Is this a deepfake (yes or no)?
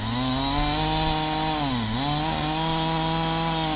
no